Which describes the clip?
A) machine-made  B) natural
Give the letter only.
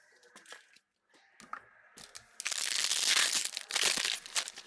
B